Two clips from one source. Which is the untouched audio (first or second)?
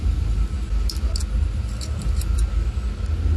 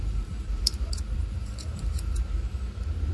first